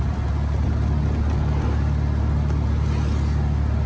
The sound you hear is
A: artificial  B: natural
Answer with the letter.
B